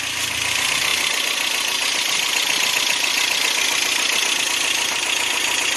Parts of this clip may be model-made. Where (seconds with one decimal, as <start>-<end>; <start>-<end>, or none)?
none